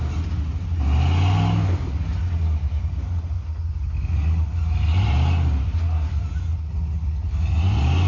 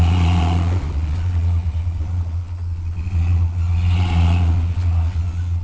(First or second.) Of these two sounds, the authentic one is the first